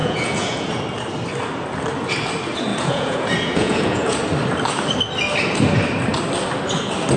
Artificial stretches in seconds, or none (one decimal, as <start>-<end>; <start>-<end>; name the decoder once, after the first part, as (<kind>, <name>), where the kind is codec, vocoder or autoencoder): 0.0-0.8 (vocoder, Vocos); 2.7-4.2